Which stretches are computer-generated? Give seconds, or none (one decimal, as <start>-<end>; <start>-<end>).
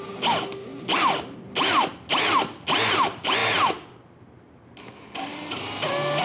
none